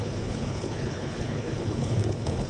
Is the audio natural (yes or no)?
no